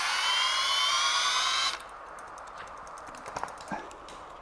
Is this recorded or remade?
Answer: recorded